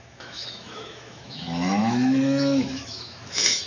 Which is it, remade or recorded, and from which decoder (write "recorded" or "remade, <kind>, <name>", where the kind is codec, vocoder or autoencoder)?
remade, autoencoder, DAC-VAE